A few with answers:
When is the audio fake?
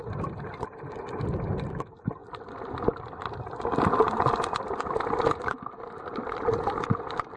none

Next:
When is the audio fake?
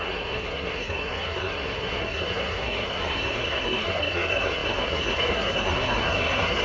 0.0-6.6 (codec, SNAC)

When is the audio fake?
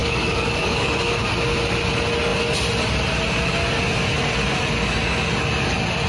0.0-1.2 (codec, DAC)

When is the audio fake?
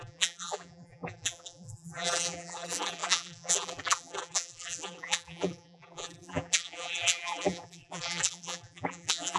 0.0-9.4 (vocoder, BigVGAN v2)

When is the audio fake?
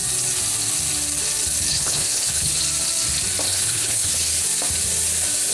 1.7-2.6 (codec, HILCodec); 3.5-4.3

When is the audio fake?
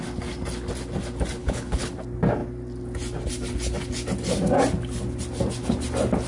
1.4-1.9 (codec, HILCodec)